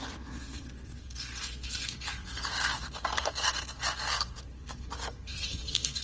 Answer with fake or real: fake